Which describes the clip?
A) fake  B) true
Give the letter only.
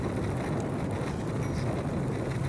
B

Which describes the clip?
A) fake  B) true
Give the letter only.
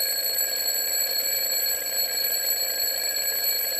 B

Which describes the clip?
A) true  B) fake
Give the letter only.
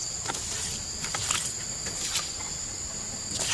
A